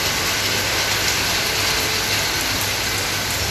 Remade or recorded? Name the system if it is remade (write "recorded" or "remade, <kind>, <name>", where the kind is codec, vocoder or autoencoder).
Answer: recorded